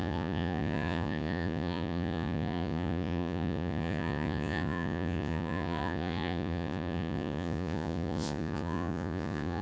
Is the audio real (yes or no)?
no